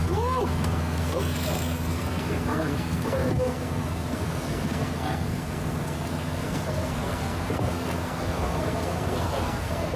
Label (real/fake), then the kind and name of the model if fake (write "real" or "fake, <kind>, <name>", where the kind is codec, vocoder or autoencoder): fake, codec, SNAC